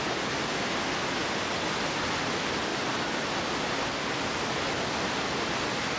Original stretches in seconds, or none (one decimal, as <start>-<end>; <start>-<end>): 0.0-6.0